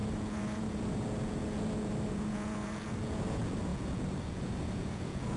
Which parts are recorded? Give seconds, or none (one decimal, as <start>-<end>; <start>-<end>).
none